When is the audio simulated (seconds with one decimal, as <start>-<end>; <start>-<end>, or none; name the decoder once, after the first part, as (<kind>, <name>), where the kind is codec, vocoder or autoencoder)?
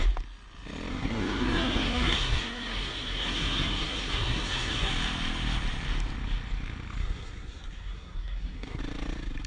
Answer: 0.9-4.9 (codec, SNAC); 7.0-8.8